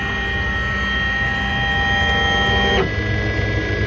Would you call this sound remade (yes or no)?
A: no